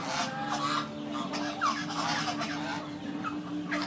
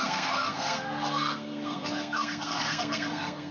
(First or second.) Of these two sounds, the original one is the first